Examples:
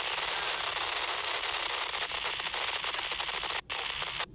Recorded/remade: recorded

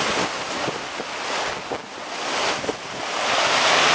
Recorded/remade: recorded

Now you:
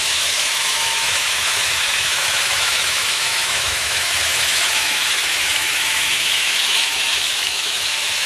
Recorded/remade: remade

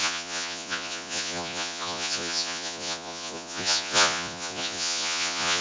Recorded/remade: remade